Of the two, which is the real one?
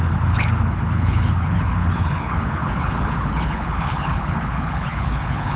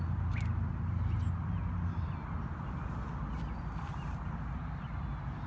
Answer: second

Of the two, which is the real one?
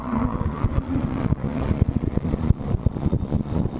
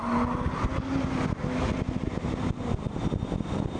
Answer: second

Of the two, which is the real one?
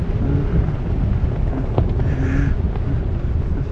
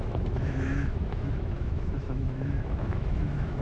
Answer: first